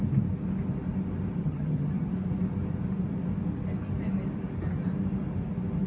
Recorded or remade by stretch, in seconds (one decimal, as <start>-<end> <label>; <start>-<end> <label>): 0.0-1.4 recorded; 1.4-2.1 remade; 2.1-5.9 recorded